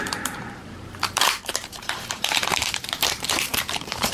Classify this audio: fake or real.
fake